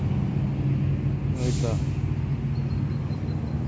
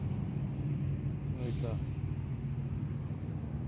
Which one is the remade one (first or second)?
second